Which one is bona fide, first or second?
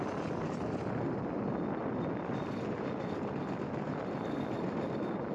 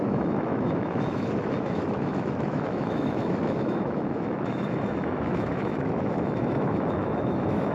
first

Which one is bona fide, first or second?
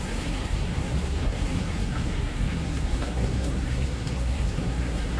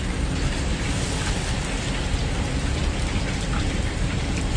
second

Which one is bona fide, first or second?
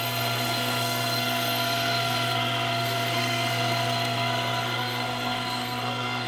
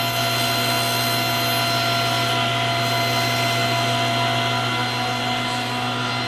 second